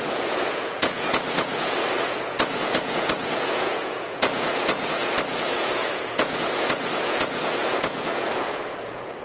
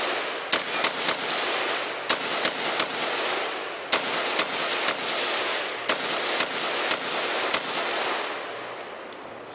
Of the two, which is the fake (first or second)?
first